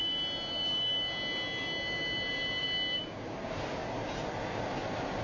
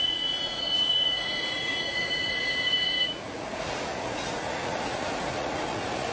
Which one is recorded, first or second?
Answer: first